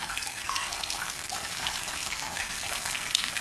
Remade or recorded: remade